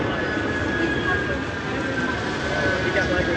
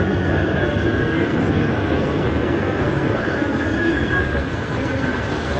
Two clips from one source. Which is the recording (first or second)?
first